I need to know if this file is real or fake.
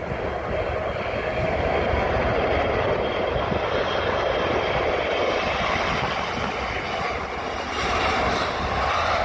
real